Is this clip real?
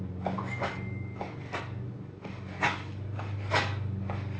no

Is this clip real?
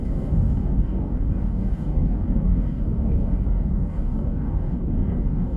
no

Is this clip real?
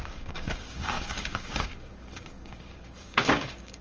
no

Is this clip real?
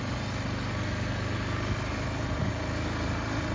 yes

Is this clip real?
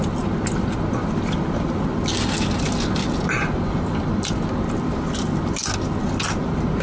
yes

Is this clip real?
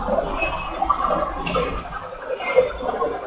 yes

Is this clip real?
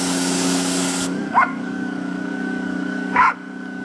no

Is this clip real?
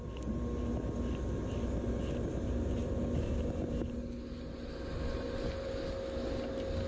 yes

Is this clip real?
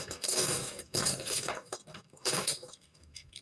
no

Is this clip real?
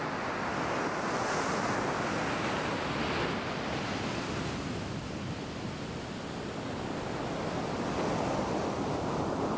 yes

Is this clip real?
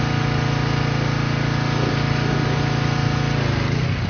yes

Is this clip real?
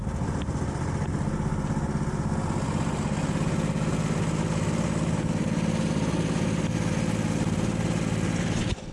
yes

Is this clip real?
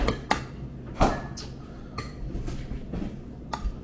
yes